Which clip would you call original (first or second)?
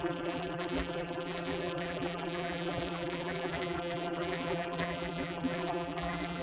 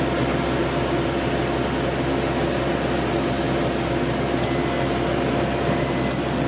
second